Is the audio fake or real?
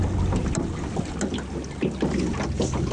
real